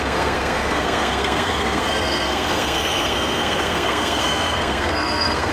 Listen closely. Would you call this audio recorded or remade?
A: remade